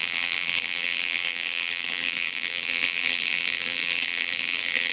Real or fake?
fake